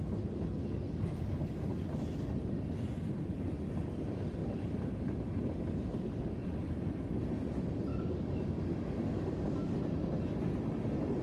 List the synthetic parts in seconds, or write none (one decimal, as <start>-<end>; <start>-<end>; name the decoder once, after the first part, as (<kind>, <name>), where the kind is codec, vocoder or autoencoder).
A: 7.9-9.7 (codec, DAC)